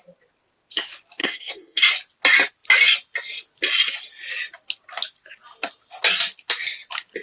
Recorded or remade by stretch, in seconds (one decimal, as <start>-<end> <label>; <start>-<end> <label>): 0.0-1.2 recorded; 1.2-1.8 remade; 1.8-7.2 recorded